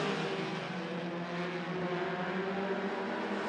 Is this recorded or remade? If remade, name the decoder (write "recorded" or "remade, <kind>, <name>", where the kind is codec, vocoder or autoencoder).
recorded